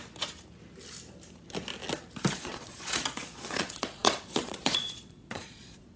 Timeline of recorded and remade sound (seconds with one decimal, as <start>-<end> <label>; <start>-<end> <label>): 0.0-2.3 recorded; 2.3-6.0 remade